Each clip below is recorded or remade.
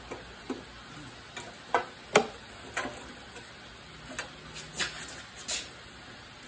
recorded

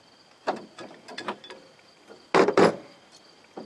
recorded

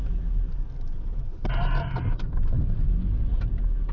recorded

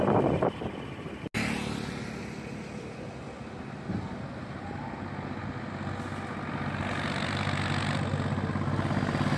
recorded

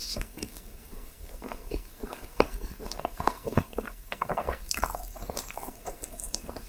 remade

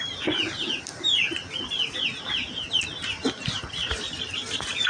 recorded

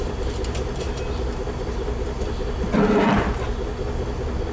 recorded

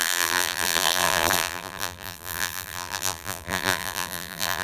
remade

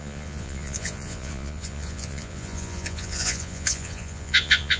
remade